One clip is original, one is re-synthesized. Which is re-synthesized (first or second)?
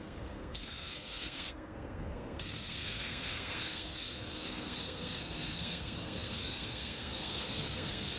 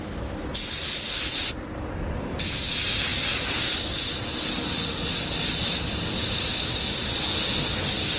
first